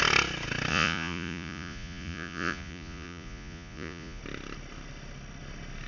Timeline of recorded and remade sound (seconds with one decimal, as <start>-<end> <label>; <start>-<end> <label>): 0.0-0.7 recorded; 0.7-4.2 remade; 4.2-5.9 recorded